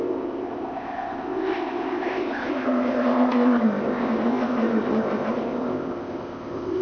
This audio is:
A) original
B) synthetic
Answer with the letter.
B